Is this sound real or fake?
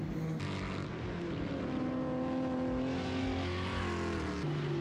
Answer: real